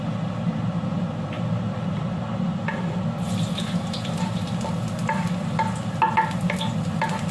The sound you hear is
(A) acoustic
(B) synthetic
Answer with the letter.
A